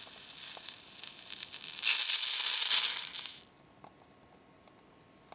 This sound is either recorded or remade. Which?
recorded